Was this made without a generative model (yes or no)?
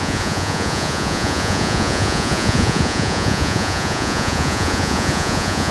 no